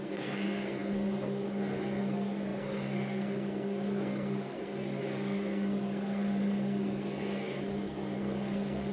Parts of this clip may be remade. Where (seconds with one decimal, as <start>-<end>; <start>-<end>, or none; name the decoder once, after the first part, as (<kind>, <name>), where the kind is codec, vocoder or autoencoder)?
0.0-8.9 (codec, SNAC)